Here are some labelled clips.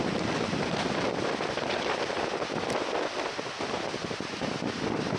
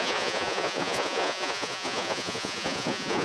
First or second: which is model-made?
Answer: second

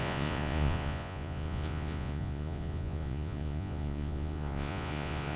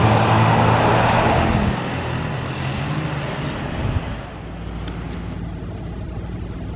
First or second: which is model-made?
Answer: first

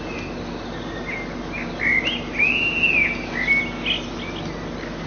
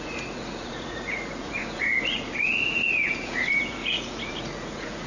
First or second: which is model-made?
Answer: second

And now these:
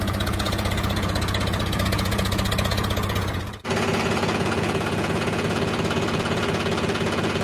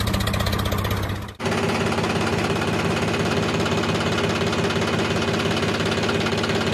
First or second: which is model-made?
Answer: first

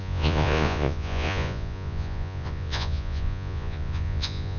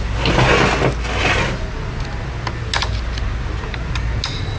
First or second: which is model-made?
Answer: first